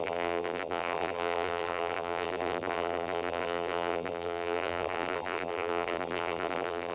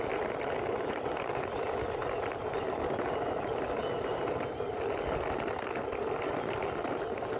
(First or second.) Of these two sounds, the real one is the second